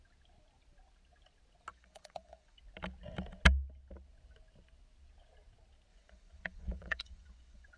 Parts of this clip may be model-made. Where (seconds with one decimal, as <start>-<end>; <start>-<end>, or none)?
1.7-2.6; 5.9-7.8